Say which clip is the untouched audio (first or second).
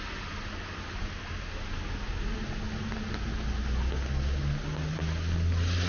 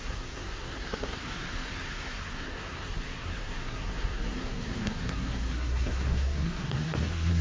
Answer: first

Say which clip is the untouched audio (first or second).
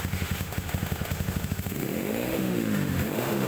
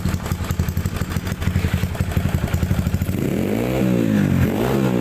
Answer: second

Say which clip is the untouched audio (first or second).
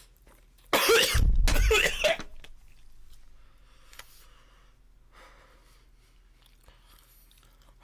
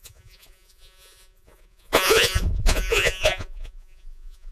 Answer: first